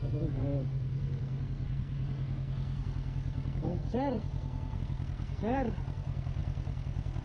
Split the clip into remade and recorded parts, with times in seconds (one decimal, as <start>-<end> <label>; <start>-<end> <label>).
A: 0.0-7.2 remade